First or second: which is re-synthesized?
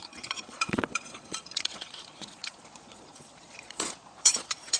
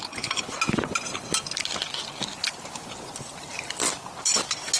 first